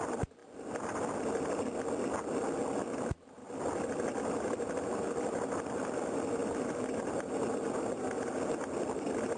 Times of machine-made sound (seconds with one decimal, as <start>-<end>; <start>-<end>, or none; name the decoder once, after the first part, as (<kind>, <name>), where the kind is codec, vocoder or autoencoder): none